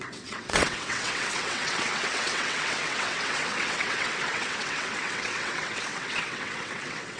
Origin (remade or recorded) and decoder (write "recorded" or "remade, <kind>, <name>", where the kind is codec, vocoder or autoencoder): remade, vocoder, WaveNeXt